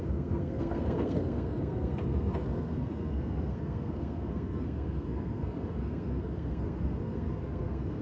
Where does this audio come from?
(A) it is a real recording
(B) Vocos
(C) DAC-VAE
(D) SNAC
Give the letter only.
D